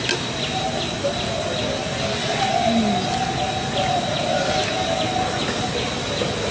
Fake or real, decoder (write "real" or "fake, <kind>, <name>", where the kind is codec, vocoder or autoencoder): real